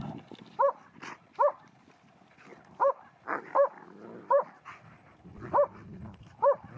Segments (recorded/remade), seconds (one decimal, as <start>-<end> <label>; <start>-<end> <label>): 0.0-6.8 recorded